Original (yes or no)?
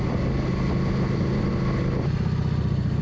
yes